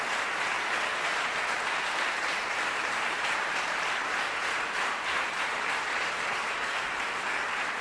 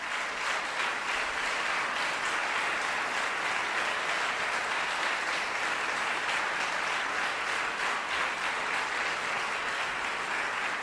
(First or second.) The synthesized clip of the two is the first